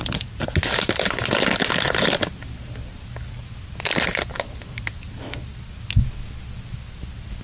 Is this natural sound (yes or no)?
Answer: yes